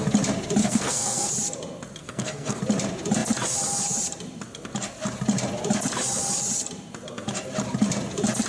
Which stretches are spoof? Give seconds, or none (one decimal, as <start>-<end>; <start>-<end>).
0.6-1.3; 2.0-2.6